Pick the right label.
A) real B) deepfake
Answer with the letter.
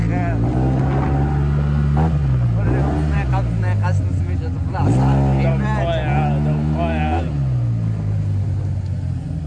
A